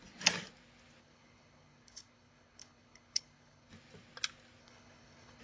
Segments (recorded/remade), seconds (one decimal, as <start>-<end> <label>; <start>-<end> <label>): 0.0-1.0 recorded; 1.0-3.7 remade; 3.7-4.6 recorded; 4.6-5.4 remade